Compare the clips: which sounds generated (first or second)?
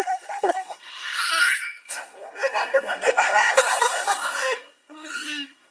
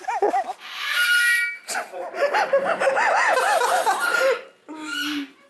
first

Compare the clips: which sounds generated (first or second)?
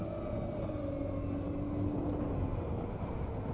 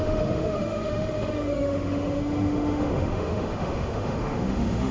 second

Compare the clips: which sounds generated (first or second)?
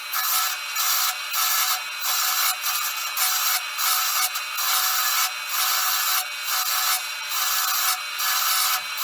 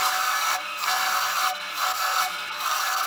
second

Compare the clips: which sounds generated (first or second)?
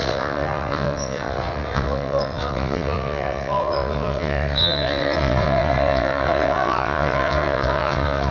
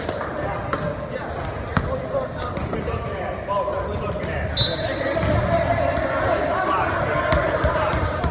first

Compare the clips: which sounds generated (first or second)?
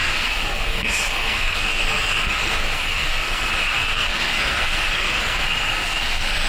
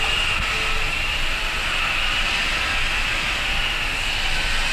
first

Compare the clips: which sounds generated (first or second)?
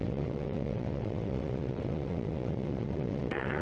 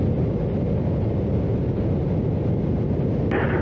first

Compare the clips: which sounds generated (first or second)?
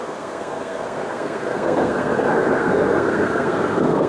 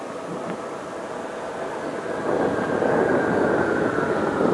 first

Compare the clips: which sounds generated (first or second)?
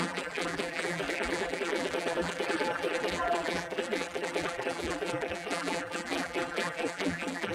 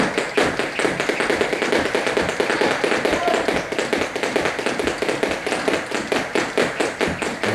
first